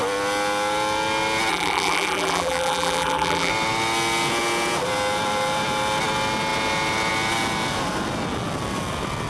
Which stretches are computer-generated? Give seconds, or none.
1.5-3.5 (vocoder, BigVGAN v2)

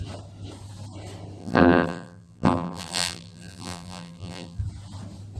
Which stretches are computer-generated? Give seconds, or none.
1.4-4.6 (vocoder, BigVGAN v2)

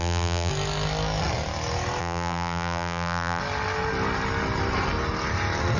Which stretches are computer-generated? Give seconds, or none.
0.0-0.5 (vocoder, BigVGAN v2); 2.0-3.4